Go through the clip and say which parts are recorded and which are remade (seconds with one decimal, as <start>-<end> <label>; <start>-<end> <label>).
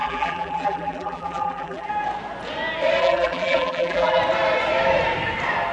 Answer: 0.0-1.9 remade; 1.9-3.0 recorded; 3.0-4.2 remade; 4.2-5.7 recorded